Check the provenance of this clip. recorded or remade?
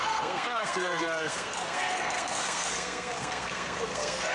remade